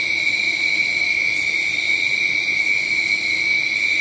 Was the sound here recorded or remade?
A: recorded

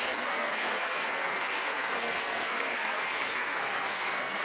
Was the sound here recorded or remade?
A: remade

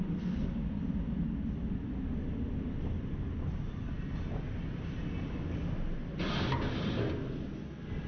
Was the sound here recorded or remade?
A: recorded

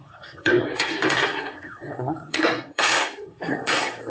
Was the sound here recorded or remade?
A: remade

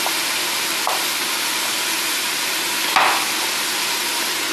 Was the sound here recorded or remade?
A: recorded